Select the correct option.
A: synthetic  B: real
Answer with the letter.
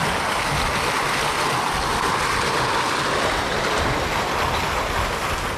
B